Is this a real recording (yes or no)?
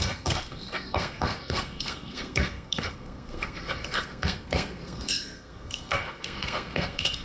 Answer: no